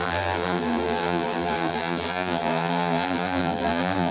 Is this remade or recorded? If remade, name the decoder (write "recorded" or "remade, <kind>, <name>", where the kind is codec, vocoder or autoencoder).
remade, vocoder, BigVGAN v2